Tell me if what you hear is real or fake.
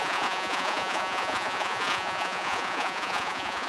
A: fake